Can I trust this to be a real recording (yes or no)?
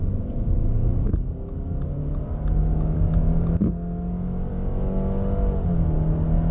yes